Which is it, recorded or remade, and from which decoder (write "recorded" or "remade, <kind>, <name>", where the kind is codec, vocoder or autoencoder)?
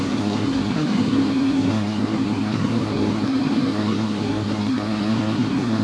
remade, codec, SNAC